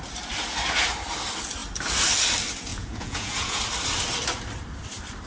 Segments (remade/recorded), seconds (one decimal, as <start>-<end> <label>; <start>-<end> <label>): 0.0-2.7 recorded; 2.7-3.6 remade; 3.6-5.3 recorded